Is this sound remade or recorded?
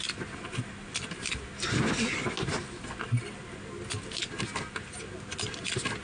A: recorded